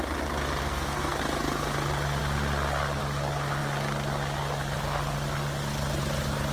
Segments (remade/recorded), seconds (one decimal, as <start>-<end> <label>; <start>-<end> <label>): 0.0-0.6 recorded; 0.6-1.2 remade; 1.2-6.5 recorded